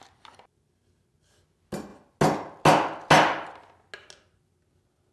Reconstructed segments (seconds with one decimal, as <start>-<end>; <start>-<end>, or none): none